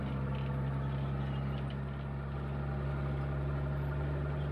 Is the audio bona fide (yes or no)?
no